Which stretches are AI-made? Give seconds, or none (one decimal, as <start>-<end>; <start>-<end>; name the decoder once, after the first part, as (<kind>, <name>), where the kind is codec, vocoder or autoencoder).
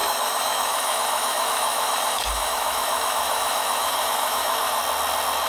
0.0-4.8 (autoencoder, DAC-VAE)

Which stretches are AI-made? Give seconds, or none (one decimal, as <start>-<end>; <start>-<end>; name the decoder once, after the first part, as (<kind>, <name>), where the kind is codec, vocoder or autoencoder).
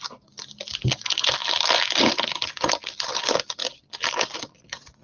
none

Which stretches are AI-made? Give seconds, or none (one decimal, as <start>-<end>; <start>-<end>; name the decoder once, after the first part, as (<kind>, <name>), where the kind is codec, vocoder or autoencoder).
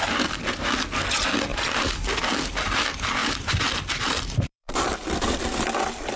1.5-2.5 (vocoder, BigVGAN v2); 3.2-6.2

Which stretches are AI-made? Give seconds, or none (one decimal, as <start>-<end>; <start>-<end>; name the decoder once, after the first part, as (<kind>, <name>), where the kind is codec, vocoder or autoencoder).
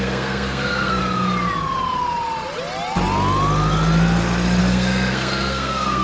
0.0-1.0 (codec, SNAC); 4.6-6.0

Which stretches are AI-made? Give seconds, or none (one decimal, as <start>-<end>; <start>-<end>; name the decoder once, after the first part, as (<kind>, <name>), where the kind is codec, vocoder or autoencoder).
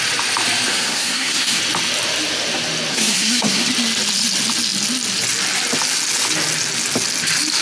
0.7-1.6 (codec, SNAC); 2.9-3.7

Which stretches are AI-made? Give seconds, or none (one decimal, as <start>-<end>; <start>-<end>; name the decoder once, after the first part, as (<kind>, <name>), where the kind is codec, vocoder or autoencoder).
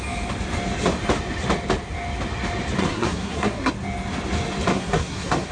2.8-3.7 (codec, SNAC); 4.7-5.5